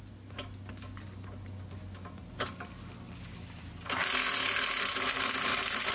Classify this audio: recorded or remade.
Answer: recorded